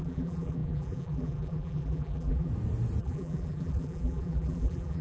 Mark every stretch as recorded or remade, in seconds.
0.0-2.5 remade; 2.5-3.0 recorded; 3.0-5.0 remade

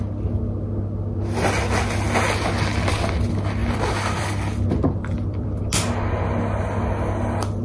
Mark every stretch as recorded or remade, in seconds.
0.0-3.6 recorded; 3.6-5.6 remade; 5.6-7.6 recorded

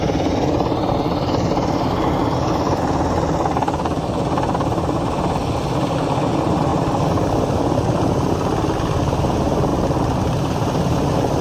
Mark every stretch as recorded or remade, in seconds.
0.0-9.7 recorded; 9.7-10.7 remade; 10.7-11.4 recorded

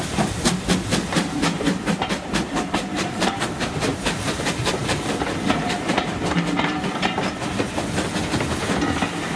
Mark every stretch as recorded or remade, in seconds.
0.0-1.4 recorded; 1.4-3.4 remade; 3.4-3.9 recorded; 3.9-6.1 remade; 6.1-9.4 recorded

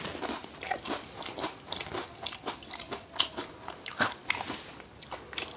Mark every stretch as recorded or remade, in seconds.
0.0-5.6 recorded